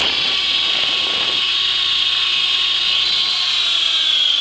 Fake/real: fake